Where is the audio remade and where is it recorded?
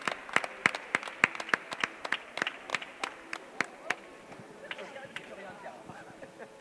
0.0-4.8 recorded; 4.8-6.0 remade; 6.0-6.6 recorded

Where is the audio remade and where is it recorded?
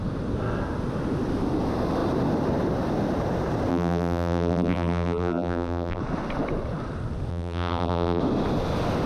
0.0-3.7 recorded; 3.7-6.0 remade; 6.0-7.3 recorded; 7.3-8.2 remade; 8.2-9.1 recorded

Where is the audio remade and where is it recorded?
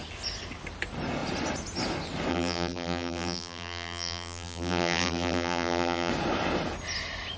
0.0-2.3 recorded; 2.3-6.1 remade; 6.1-7.4 recorded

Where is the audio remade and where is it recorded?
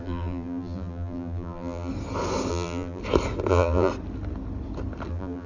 0.0-1.9 remade; 1.9-2.5 recorded; 2.5-3.0 remade; 3.0-3.5 recorded; 3.5-3.9 remade; 3.9-5.1 recorded; 5.1-5.5 remade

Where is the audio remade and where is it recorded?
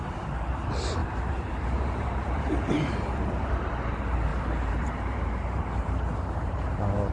0.0-1.0 recorded; 1.0-3.5 remade; 3.5-4.3 recorded; 4.3-7.1 remade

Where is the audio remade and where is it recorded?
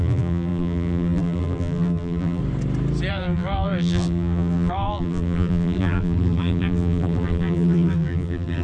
0.0-2.4 remade; 2.4-3.1 recorded; 3.1-8.6 remade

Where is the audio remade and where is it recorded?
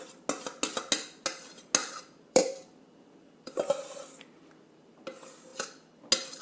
0.0-1.8 recorded; 1.8-5.0 remade; 5.0-6.4 recorded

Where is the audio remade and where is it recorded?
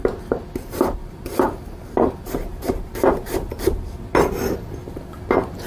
0.0-1.0 recorded; 1.0-4.4 remade; 4.4-5.7 recorded